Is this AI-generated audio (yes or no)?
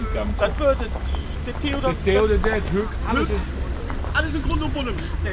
no